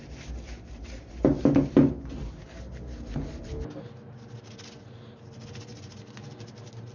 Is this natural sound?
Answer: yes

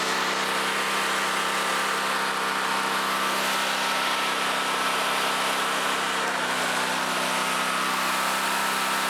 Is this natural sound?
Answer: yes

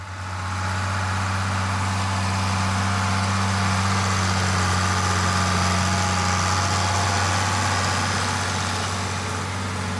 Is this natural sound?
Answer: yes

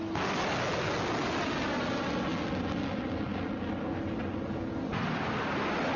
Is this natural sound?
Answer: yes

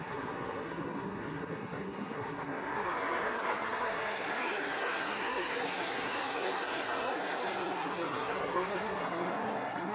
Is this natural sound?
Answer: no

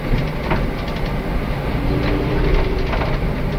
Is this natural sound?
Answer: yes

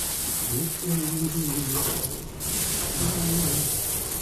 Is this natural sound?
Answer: yes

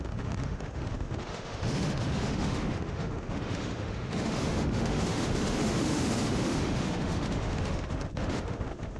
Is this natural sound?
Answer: no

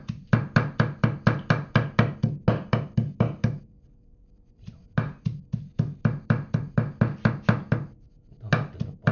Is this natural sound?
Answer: yes